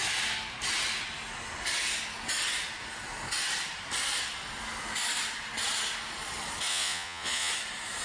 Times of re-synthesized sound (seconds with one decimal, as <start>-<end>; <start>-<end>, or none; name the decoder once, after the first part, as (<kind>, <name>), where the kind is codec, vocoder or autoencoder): 6.7-7.5 (vocoder, Vocos)